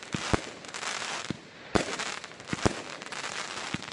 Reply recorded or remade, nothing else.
recorded